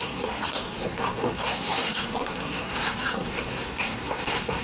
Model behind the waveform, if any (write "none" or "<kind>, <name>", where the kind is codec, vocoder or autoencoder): codec, SNAC